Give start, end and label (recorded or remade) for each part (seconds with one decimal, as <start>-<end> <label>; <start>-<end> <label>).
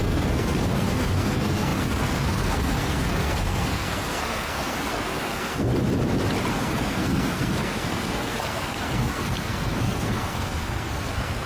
0.0-5.7 remade; 5.7-6.5 recorded; 6.5-11.5 remade